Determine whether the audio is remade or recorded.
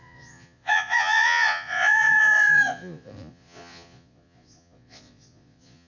remade